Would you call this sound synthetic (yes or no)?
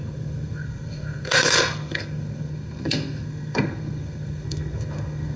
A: yes